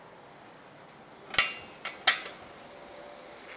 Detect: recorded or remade recorded